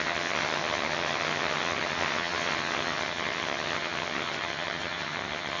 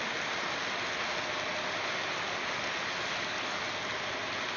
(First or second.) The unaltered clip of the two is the second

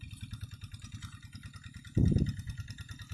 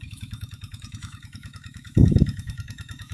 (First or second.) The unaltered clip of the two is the first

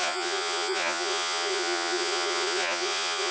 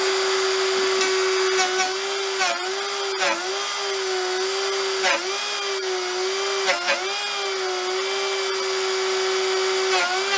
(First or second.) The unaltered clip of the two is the second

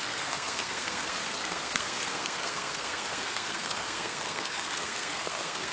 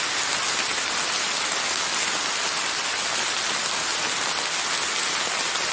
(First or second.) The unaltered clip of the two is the second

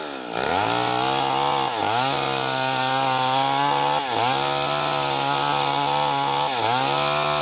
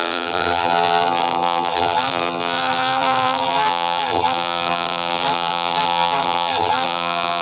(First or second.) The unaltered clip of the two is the first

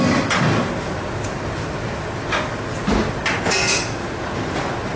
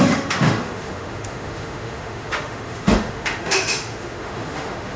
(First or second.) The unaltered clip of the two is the first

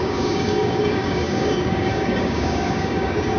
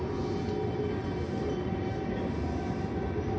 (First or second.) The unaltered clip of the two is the second